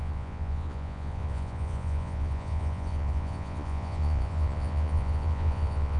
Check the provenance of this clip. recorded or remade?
remade